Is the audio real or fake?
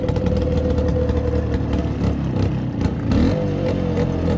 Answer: real